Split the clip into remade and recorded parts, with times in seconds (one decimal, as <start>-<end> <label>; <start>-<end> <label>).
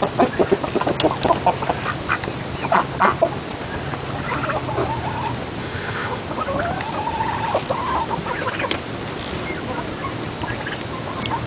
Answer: 0.0-5.6 recorded; 5.6-6.2 remade; 6.2-11.5 recorded